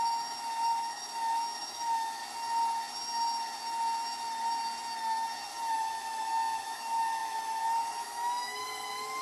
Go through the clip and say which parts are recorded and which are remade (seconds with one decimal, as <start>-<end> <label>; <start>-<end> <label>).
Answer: 0.0-2.2 remade; 2.2-5.7 recorded; 5.7-9.2 remade